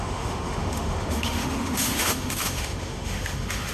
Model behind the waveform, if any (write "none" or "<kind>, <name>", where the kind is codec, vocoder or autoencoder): autoencoder, DAC-VAE